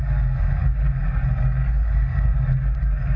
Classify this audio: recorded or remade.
remade